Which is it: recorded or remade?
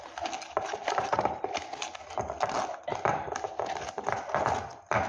recorded